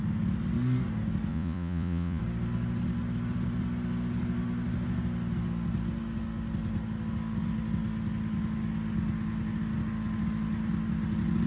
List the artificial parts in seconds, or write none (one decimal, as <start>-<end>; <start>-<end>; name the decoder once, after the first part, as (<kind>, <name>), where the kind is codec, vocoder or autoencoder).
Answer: 1.3-2.2 (vocoder, Vocos)